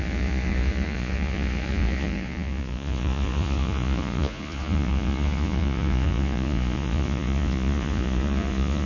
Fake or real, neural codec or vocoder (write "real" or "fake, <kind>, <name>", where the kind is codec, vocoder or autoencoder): fake, vocoder, Vocos